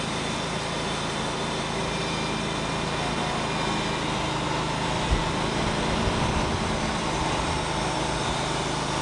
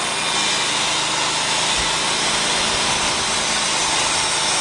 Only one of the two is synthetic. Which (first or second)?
first